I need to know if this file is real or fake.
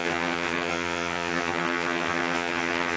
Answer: fake